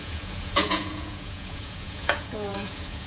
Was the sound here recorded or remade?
remade